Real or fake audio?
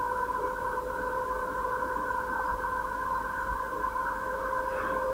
fake